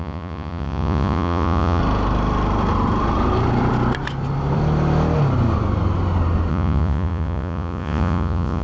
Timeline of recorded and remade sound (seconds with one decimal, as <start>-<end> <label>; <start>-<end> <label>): 0.0-1.8 remade; 1.8-6.5 recorded; 6.5-8.6 remade